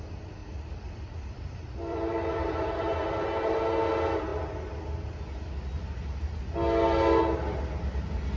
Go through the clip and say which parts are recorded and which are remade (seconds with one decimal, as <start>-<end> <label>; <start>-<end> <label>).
0.0-0.4 recorded; 0.4-3.6 remade; 3.6-8.4 recorded